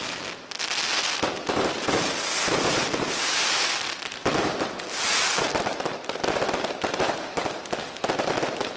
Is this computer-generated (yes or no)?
no